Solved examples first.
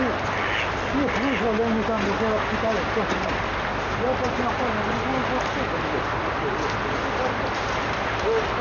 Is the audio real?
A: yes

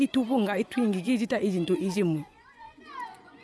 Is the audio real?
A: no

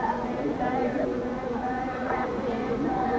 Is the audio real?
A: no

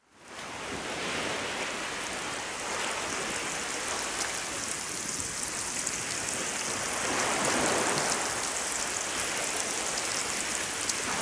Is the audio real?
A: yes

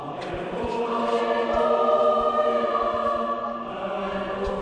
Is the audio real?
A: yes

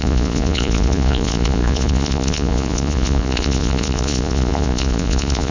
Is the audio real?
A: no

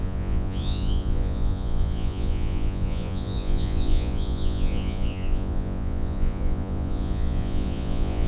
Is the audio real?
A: no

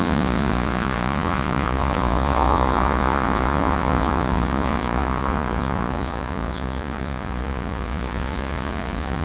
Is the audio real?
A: no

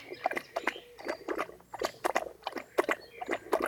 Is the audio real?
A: yes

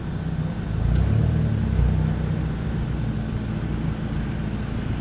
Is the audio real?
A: yes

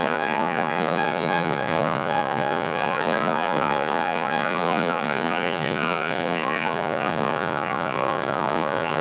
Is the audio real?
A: no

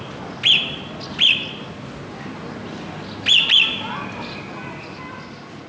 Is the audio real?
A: yes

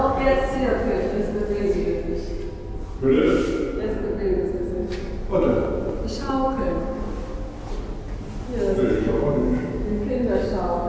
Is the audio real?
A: yes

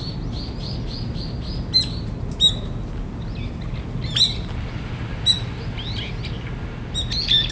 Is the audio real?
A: yes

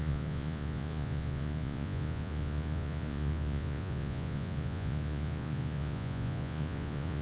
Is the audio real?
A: no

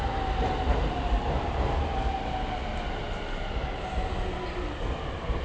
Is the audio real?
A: yes